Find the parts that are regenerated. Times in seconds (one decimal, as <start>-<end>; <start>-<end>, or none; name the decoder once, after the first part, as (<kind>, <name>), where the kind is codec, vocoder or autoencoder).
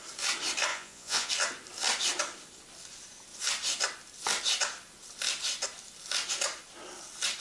0.7-1.3 (vocoder, Vocos)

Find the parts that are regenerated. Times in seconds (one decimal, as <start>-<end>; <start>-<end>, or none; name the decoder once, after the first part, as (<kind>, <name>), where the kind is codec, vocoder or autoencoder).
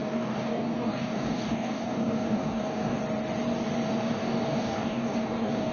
0.0-3.0 (codec, DAC); 4.0-5.7